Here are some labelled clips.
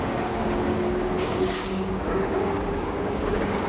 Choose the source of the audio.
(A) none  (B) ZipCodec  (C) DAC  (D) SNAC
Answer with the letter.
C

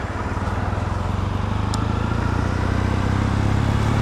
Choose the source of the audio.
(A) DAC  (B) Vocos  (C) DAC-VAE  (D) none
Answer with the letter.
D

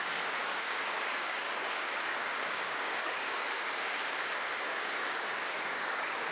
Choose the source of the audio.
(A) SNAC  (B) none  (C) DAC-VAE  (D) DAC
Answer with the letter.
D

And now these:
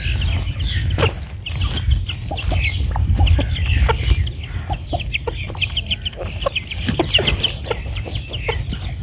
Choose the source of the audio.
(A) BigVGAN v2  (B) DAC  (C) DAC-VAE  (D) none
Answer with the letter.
D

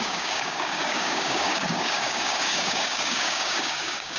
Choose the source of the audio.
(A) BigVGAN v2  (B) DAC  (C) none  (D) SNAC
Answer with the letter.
B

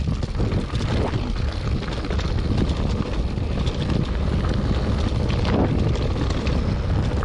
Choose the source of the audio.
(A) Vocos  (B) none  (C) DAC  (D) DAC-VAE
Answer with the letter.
B